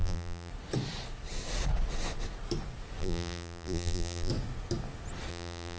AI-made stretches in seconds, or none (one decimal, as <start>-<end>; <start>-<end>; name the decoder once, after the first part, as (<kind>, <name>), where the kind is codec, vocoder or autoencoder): 0.0-0.5 (vocoder, BigVGAN v2); 3.0-4.3; 5.3-5.8